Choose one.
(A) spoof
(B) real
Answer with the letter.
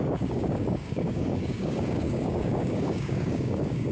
A